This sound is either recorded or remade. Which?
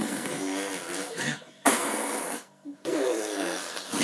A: remade